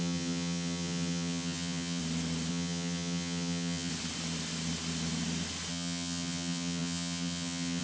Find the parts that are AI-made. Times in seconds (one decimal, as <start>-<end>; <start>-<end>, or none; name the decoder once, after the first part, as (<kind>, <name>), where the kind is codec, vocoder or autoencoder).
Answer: 0.0-2.0 (vocoder, HiFi-GAN); 2.5-3.9; 5.7-7.8